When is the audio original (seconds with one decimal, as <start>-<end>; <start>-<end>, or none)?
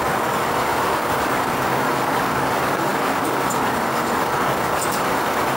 none